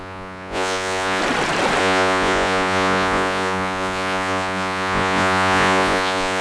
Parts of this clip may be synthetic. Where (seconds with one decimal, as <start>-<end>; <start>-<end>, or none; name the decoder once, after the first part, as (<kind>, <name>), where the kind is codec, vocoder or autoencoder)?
0.0-1.2 (vocoder, Vocos); 1.8-6.4